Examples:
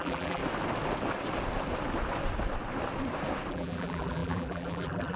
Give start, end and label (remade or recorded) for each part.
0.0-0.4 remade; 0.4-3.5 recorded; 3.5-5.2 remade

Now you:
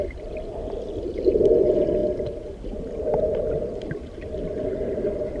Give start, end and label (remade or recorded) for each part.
0.0-5.4 recorded

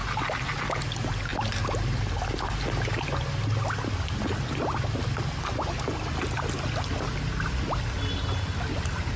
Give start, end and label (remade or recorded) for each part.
0.0-0.6 remade; 0.6-9.2 recorded

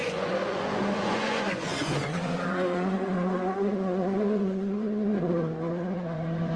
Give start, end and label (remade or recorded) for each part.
0.0-6.6 remade

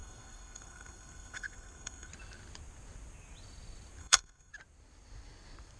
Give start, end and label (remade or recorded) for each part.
0.0-2.1 remade; 2.1-4.0 recorded; 4.0-4.5 remade; 4.5-5.8 recorded

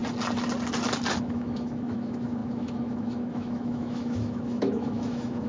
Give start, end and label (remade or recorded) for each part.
0.0-1.2 recorded; 1.2-5.5 remade

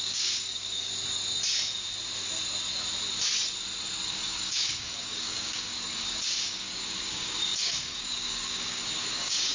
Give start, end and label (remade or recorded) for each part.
0.0-0.9 remade; 0.9-4.1 recorded; 4.1-9.5 remade